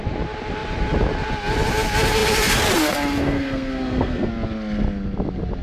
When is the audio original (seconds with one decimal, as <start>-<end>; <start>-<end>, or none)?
0.0-3.2; 4.3-5.6

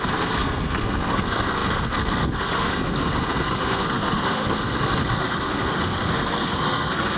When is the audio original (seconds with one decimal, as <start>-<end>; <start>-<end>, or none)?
none

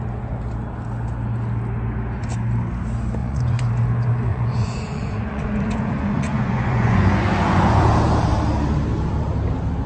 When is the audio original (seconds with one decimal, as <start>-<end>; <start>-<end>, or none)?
0.0-3.2; 3.7-4.3; 7.9-9.9

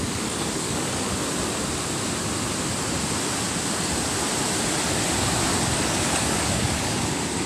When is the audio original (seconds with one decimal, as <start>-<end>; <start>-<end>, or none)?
1.1-5.6

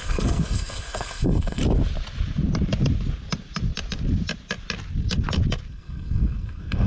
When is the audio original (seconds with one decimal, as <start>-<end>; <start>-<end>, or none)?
1.6-5.7